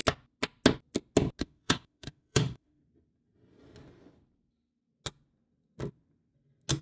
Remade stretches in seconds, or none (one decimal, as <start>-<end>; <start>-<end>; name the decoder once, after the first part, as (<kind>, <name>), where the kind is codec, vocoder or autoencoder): 1.4-2.8 (autoencoder, DAC-VAE)